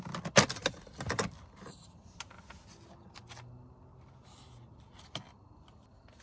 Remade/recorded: recorded